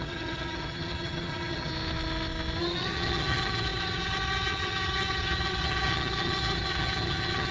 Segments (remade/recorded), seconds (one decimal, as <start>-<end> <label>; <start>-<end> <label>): 0.0-1.7 remade; 1.7-2.6 recorded; 2.6-7.5 remade